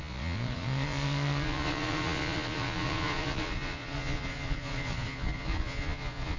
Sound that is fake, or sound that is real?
fake